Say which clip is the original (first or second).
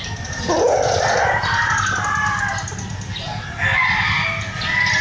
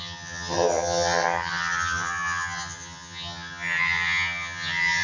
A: first